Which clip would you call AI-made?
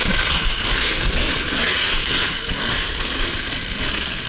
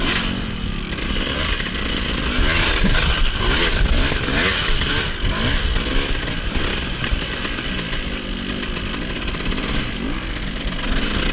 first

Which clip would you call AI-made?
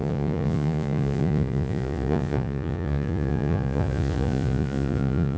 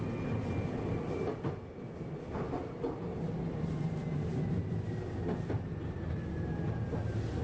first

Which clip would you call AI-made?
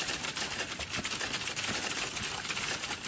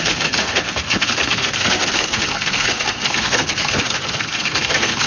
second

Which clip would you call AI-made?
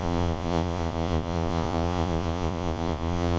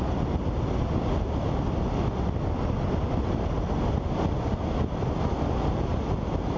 first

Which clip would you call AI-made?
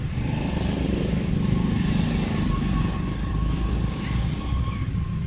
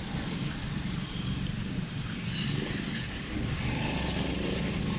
first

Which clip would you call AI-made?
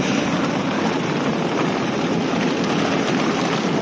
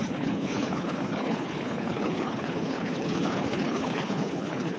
second